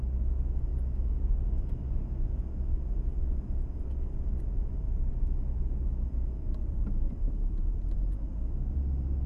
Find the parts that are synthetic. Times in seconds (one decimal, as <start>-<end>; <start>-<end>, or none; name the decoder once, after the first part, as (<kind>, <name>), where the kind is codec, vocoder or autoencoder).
none